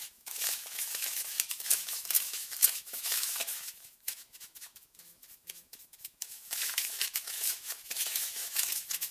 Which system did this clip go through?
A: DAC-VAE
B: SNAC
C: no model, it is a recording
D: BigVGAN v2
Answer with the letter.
A